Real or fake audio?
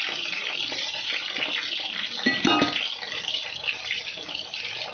real